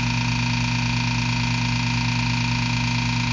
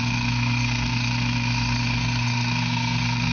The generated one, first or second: second